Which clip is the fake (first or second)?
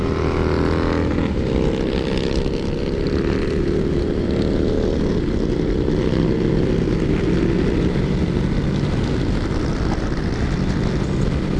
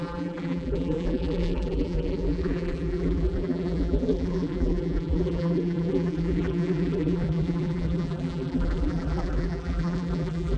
second